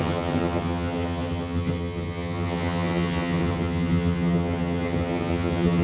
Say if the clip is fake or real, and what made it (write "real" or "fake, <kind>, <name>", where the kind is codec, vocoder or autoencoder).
fake, vocoder, HiFi-GAN